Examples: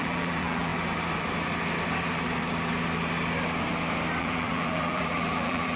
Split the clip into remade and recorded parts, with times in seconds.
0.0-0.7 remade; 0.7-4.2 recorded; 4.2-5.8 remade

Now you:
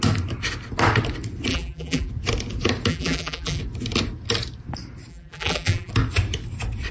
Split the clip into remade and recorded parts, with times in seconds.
0.0-1.5 recorded; 1.5-2.1 remade; 2.1-2.9 recorded; 2.9-3.6 remade; 3.6-5.1 recorded; 5.1-5.9 remade; 5.9-6.9 recorded

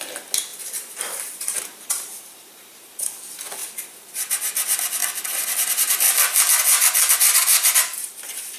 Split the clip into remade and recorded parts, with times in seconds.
0.0-0.5 recorded; 0.5-3.1 remade; 3.1-3.6 recorded; 3.6-4.3 remade; 4.3-8.6 recorded

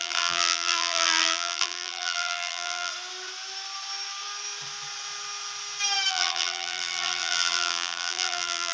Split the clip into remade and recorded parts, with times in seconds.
0.0-2.9 remade; 2.9-6.1 recorded; 6.1-8.7 remade

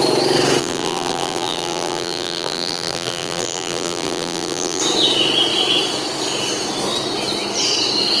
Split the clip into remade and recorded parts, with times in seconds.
0.0-0.6 recorded; 0.6-4.8 remade; 4.8-8.2 recorded

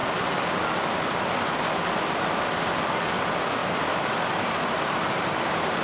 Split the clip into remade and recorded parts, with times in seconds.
0.0-3.6 recorded; 3.6-5.8 remade